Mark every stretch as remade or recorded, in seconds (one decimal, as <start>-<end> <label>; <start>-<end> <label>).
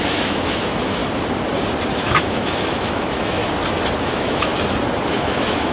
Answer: 0.0-1.0 remade; 1.0-1.9 recorded; 1.9-3.4 remade; 3.4-4.0 recorded; 4.0-4.5 remade; 4.5-5.1 recorded; 5.1-5.7 remade